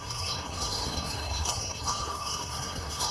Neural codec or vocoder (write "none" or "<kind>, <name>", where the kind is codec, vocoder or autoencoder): codec, SNAC